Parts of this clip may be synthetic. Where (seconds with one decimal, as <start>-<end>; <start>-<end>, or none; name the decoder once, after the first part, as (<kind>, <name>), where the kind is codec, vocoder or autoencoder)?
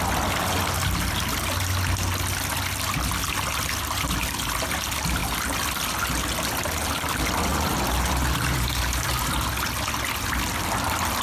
7.5-9.2 (vocoder, BigVGAN v2)